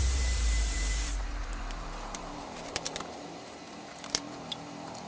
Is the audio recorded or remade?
remade